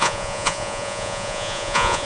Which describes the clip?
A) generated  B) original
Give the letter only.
A